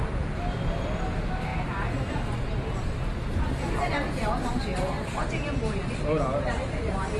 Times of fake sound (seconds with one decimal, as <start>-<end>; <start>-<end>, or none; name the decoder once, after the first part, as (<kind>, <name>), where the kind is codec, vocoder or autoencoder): none